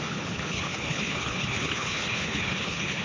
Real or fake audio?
fake